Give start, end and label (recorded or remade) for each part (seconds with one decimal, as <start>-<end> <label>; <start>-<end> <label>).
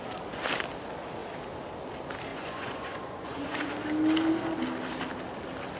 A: 0.0-2.3 recorded; 2.3-3.7 remade; 3.7-5.8 recorded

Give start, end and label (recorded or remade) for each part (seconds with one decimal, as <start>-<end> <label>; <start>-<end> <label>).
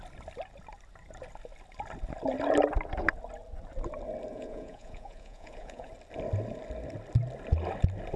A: 0.0-4.3 recorded; 4.3-5.9 remade; 5.9-8.2 recorded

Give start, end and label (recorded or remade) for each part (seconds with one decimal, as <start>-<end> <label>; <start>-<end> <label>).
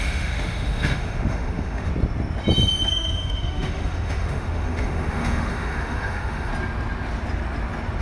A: 0.0-1.9 remade; 1.9-2.9 recorded; 2.9-6.5 remade; 6.5-8.0 recorded